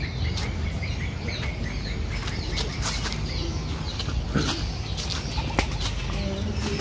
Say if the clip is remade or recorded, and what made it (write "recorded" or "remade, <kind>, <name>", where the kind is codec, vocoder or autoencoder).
recorded